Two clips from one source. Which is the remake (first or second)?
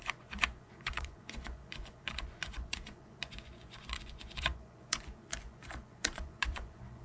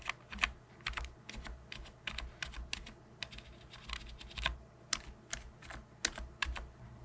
first